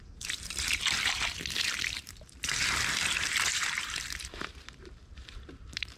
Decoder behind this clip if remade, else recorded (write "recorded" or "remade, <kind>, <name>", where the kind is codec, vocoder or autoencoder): remade, vocoder, BigVGAN v2